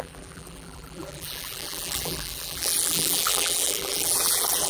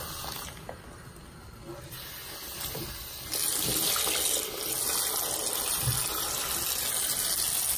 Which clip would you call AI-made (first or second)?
first